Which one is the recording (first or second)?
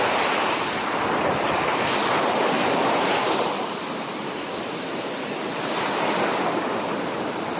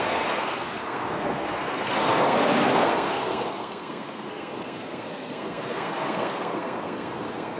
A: first